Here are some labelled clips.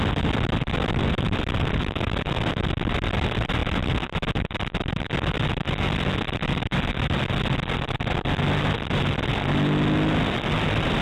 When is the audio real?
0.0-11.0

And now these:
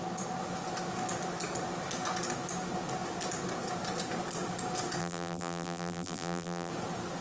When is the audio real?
0.0-5.0; 6.7-7.2

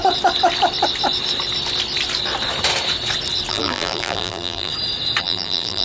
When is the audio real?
0.0-3.5; 4.7-5.2